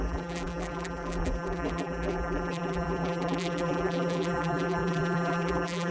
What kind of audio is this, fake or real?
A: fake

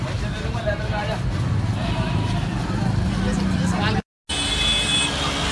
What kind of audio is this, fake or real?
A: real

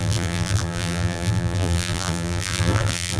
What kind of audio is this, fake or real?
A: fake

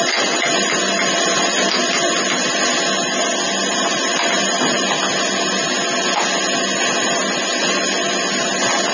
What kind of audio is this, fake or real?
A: real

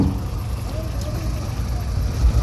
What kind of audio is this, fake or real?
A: real